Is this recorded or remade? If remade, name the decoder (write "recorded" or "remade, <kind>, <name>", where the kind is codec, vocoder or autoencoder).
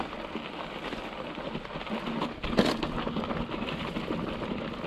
recorded